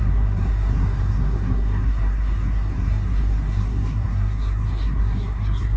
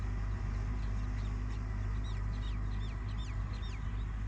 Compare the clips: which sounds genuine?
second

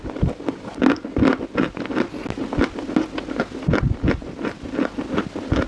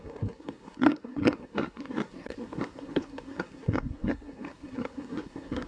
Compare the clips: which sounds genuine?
first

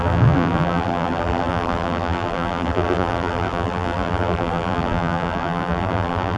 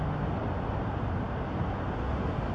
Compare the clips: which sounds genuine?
second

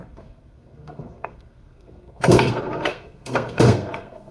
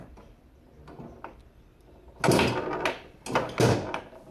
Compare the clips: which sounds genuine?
second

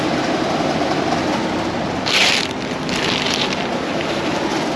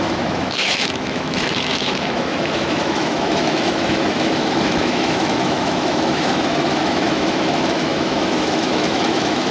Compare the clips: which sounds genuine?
first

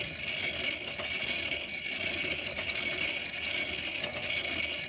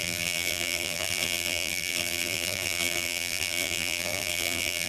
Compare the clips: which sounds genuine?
first